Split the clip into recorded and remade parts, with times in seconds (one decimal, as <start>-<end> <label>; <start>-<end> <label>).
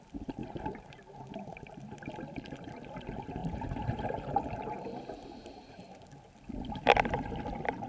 0.0-0.4 recorded; 0.4-1.3 remade; 1.3-3.4 recorded; 3.4-5.8 remade; 5.8-7.9 recorded